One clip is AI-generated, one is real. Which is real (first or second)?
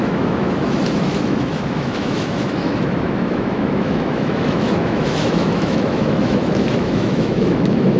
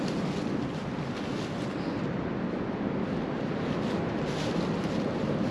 second